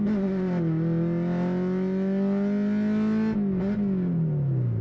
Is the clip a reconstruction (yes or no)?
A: no